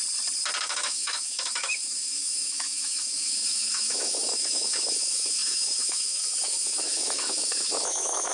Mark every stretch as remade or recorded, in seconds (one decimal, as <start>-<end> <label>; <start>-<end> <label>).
0.0-0.6 recorded; 0.6-8.3 remade

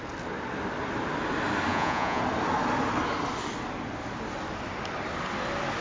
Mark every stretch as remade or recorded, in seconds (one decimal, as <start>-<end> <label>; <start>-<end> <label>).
0.0-1.7 recorded; 1.7-2.2 remade; 2.2-5.8 recorded

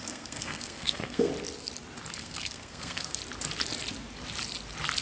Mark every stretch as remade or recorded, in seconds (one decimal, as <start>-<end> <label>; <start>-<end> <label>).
0.0-1.3 remade; 1.3-2.2 recorded; 2.2-3.2 remade; 3.2-5.0 recorded

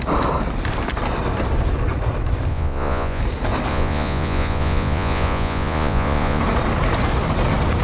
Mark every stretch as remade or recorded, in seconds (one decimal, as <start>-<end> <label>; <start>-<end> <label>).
0.0-2.5 recorded; 2.5-3.2 remade; 3.2-3.7 recorded; 3.7-6.4 remade; 6.4-7.8 recorded

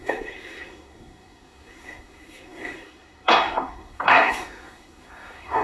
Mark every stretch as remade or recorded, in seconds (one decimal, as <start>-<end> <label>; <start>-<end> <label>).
0.0-5.6 remade

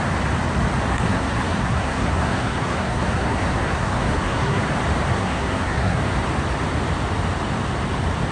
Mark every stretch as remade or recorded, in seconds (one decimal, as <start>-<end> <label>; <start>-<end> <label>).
0.0-0.9 recorded; 0.9-4.6 remade; 4.6-5.1 recorded; 5.1-6.0 remade; 6.0-8.3 recorded

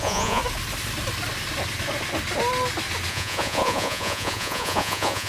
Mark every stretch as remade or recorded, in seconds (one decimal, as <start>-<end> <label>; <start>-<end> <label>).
0.0-0.4 remade; 0.4-3.1 recorded; 3.1-5.3 remade

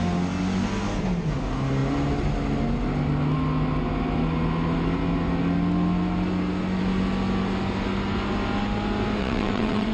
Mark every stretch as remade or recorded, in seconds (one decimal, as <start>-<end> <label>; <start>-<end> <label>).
0.0-9.2 recorded; 9.2-9.9 remade